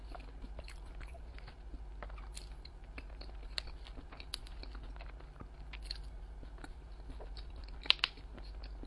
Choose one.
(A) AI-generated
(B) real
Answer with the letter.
B